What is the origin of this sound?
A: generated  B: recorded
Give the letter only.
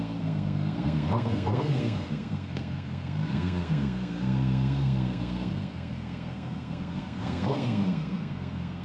A